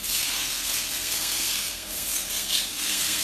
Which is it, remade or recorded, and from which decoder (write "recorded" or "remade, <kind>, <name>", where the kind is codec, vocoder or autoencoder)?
remade, codec, SNAC